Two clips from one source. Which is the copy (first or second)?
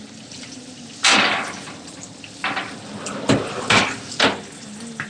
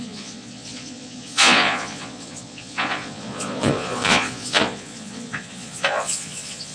second